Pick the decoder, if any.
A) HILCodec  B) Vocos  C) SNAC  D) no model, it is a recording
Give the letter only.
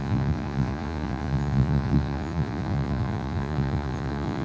B